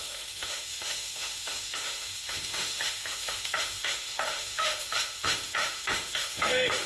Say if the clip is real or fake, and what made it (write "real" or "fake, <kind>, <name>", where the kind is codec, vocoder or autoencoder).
fake, autoencoder, DAC-VAE